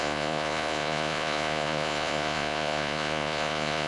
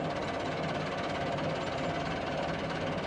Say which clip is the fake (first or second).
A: first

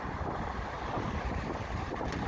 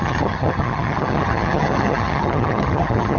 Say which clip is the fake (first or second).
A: second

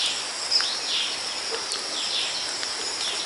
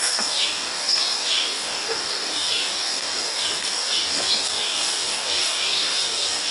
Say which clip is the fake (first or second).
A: second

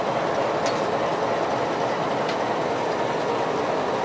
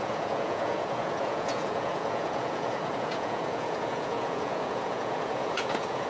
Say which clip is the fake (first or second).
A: second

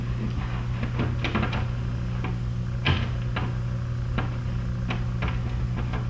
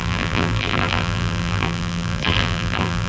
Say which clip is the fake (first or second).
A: second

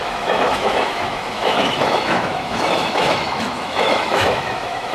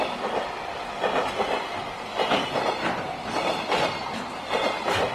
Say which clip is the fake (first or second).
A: first